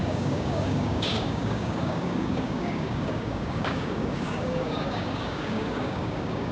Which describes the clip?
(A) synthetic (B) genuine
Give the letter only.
A